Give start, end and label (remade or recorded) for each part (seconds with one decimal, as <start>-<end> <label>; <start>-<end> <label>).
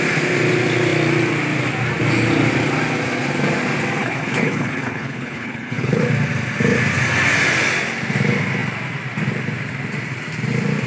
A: 0.0-4.0 recorded; 4.0-6.0 remade; 6.0-10.9 recorded